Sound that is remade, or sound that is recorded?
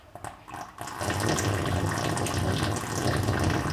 recorded